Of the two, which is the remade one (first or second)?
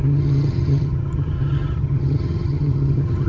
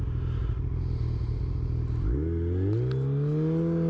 first